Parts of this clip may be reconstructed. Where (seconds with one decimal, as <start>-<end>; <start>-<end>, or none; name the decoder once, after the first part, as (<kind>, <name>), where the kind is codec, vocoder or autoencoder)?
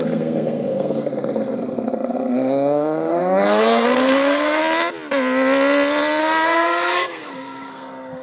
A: 0.0-4.6 (codec, SNAC); 6.2-8.2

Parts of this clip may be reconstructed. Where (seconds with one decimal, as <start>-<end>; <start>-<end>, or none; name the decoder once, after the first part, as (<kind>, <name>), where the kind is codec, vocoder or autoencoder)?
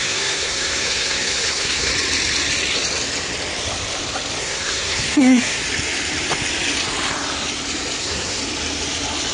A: 0.0-1.9 (codec, SNAC); 4.4-5.6; 8.0-8.4